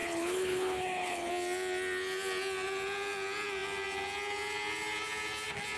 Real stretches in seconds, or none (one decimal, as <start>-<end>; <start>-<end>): 1.3-5.8